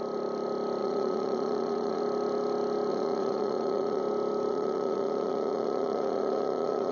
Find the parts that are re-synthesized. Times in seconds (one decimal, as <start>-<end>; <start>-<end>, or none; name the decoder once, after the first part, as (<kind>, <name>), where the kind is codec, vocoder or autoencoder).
0.8-2.0 (vocoder, Vocos); 2.9-4.0; 4.5-6.9